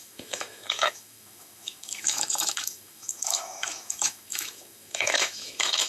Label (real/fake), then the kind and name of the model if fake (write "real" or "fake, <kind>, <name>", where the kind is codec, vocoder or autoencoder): fake, autoencoder, DAC-VAE